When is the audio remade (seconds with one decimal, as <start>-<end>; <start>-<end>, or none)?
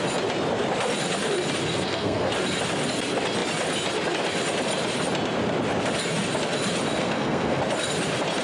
1.7-2.3; 7.0-7.6